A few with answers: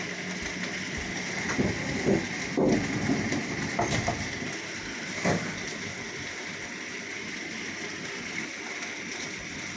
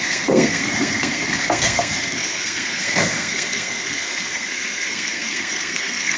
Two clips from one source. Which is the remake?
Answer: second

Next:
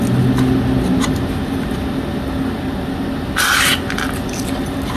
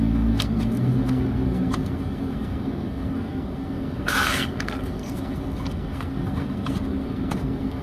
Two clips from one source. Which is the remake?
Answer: second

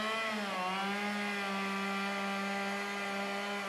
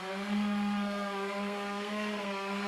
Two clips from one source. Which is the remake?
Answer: second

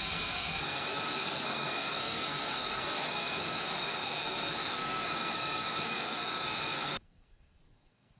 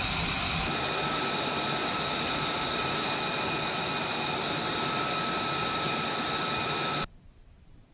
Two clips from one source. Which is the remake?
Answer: first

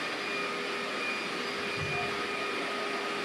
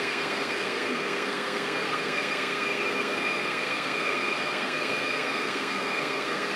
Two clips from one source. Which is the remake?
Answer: second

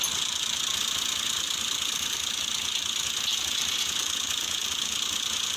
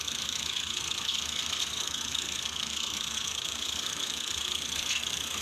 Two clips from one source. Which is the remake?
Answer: second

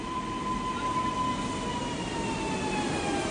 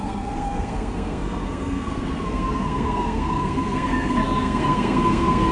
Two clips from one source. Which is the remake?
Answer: second